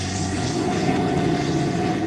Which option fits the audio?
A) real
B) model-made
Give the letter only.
B